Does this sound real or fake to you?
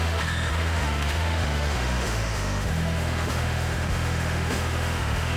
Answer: fake